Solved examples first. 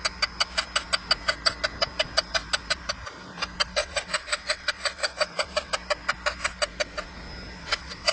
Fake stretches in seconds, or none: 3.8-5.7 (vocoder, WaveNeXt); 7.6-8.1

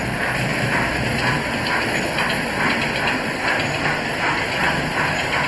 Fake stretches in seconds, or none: none